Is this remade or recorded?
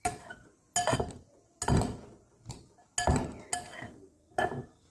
recorded